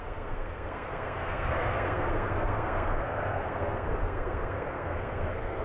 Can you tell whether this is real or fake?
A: fake